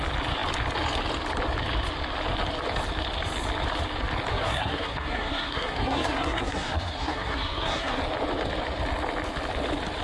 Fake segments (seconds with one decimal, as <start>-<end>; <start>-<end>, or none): 4.3-8.0